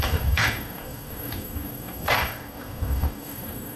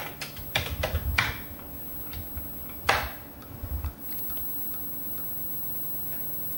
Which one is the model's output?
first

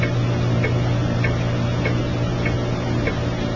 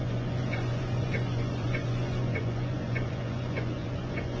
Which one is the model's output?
second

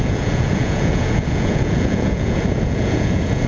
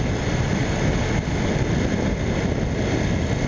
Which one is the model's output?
first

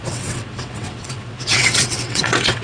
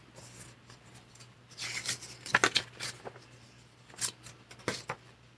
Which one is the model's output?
first